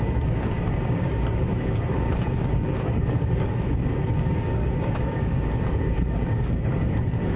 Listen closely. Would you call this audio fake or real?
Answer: fake